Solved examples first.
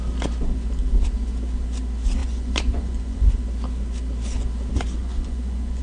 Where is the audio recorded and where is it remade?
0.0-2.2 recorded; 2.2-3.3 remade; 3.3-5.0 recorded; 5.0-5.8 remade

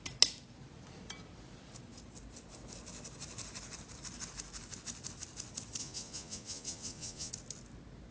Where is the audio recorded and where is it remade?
0.0-5.8 recorded; 5.8-7.3 remade; 7.3-8.1 recorded

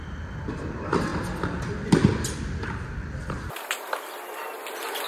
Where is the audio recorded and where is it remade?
0.0-5.1 recorded

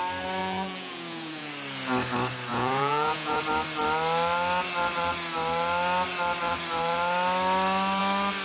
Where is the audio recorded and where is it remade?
0.0-0.4 recorded; 0.4-1.5 remade; 1.5-2.5 recorded; 2.5-3.4 remade; 3.4-8.4 recorded

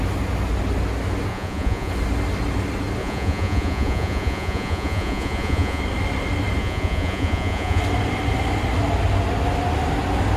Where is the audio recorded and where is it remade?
0.0-1.3 recorded; 1.3-1.9 remade; 1.9-3.0 recorded; 3.0-5.8 remade; 5.8-6.6 recorded; 6.6-7.8 remade; 7.8-10.4 recorded